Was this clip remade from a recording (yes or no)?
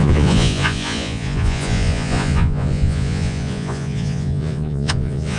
yes